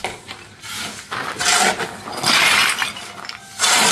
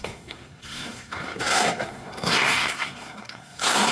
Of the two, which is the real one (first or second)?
first